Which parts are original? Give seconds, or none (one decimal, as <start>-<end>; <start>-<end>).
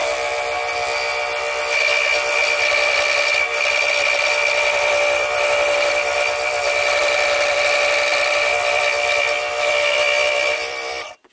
0.0-2.4; 7.6-8.1